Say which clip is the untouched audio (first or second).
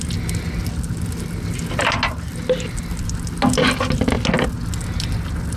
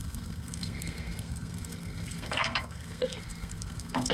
first